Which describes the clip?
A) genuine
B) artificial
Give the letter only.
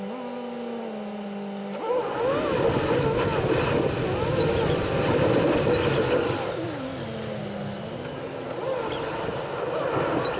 A